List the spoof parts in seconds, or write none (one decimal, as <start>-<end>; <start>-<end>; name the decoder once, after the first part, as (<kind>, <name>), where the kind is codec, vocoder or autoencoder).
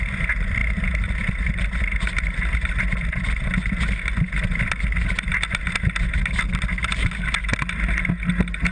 none